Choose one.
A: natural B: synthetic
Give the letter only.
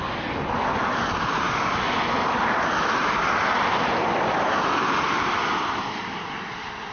A